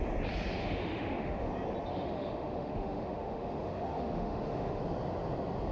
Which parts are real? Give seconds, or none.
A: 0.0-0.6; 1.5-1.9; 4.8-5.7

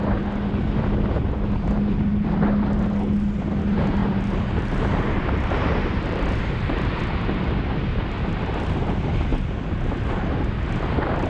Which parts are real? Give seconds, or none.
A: 0.0-4.0; 7.0-11.3

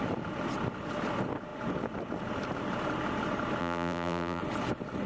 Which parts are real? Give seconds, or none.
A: 0.0-3.6; 4.4-5.1

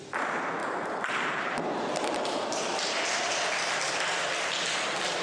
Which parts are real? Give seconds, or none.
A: 0.0-0.6; 3.7-5.2

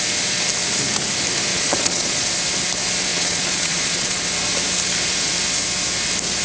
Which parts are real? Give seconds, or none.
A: 0.0-1.5; 2.3-3.1; 4.2-6.4